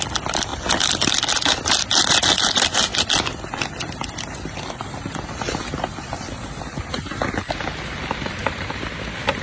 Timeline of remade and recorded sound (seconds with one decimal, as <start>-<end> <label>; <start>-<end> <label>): 0.0-8.4 recorded; 8.4-8.9 remade; 8.9-9.4 recorded